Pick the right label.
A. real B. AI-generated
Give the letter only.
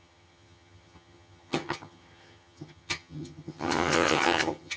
B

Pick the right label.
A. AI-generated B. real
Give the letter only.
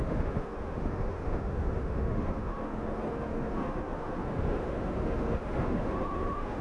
A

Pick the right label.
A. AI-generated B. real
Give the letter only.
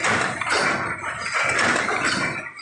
B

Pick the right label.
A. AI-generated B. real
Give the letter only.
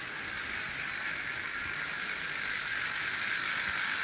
B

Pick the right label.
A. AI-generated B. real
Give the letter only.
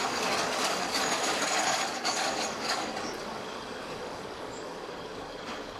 A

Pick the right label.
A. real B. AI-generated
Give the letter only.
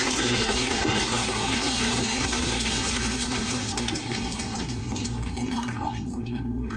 B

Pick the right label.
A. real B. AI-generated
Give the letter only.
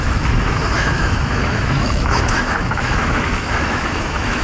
B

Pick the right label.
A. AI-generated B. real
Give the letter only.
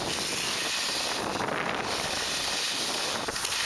B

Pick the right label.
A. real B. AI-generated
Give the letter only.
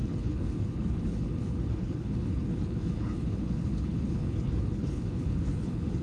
B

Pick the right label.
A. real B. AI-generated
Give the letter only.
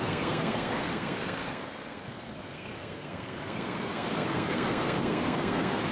B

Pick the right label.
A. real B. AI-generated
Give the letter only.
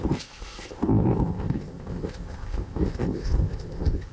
B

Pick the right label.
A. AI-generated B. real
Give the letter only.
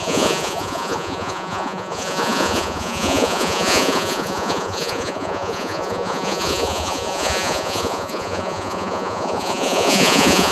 A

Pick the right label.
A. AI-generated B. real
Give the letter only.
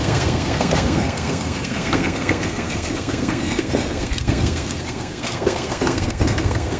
A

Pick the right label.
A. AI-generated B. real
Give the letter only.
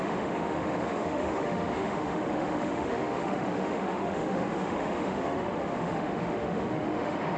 A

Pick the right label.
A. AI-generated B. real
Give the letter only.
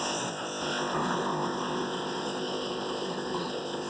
A